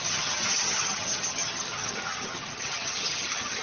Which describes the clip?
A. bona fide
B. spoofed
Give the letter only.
B